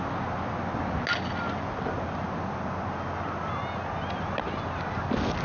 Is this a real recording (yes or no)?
yes